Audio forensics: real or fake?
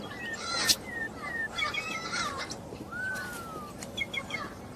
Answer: fake